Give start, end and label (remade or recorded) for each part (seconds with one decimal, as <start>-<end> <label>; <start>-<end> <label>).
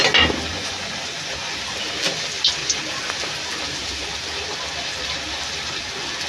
0.0-0.5 recorded; 0.5-1.6 remade; 1.6-6.3 recorded